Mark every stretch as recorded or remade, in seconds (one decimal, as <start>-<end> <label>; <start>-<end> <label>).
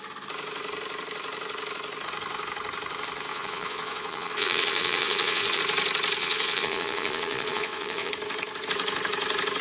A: 0.0-3.3 recorded; 3.3-5.6 remade; 5.6-6.2 recorded; 6.2-8.1 remade; 8.1-9.6 recorded